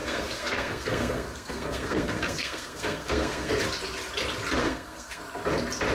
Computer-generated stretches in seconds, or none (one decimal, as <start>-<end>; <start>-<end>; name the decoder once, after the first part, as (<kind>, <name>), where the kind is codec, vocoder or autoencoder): 0.0-3.5 (codec, SNAC); 4.6-5.2